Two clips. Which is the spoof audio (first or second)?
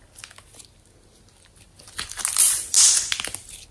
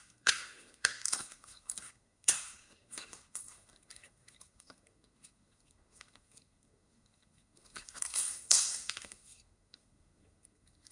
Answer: second